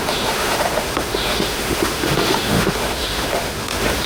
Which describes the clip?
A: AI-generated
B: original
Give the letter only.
A